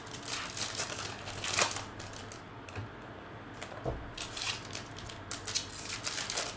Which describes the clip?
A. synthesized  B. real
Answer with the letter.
B